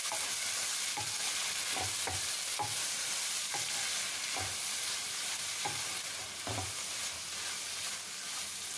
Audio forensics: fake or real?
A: real